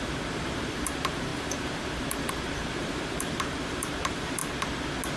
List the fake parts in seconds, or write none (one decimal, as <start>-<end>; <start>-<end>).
0.0-4.4